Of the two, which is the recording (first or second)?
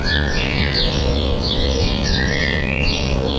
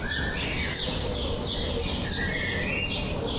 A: second